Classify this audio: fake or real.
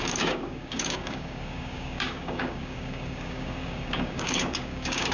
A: fake